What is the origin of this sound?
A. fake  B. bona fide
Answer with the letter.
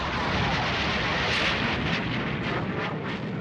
B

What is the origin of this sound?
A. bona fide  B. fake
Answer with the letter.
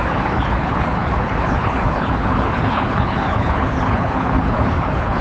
B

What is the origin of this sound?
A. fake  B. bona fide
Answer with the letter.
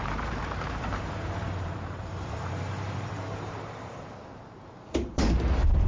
A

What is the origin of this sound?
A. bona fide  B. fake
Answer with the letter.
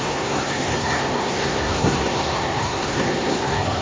B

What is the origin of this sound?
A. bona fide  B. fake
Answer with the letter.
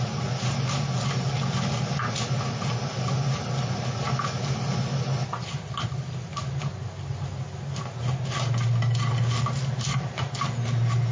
A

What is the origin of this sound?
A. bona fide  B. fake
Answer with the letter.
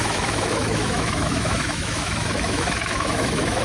B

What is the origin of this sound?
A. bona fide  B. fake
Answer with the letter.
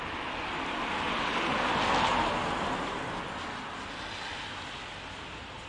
A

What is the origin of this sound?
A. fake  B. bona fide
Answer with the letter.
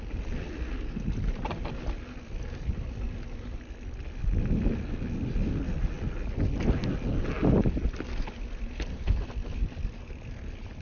B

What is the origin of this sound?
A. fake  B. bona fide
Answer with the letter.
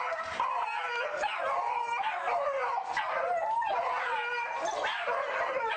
B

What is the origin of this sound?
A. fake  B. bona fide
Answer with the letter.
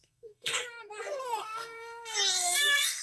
A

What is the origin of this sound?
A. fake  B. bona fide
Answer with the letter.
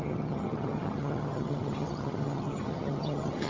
A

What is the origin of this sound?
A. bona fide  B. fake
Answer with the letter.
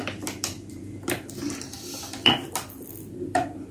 B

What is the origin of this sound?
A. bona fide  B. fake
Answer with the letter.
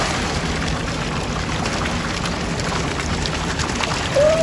B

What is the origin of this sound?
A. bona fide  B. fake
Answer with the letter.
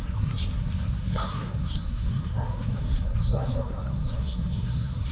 B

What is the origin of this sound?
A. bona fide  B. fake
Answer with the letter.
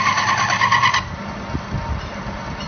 A